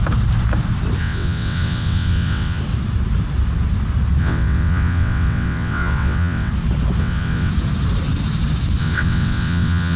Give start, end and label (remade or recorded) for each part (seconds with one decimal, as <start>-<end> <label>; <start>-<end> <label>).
0.0-1.0 recorded; 1.0-2.6 remade; 2.6-4.2 recorded; 4.2-6.5 remade; 6.5-7.0 recorded; 7.0-7.5 remade; 7.5-8.8 recorded; 8.8-10.0 remade